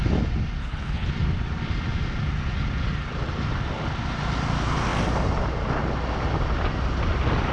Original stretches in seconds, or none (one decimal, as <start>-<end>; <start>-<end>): 0.0-0.6; 1.1-7.5